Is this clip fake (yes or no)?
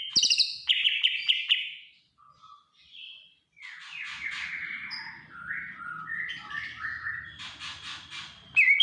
no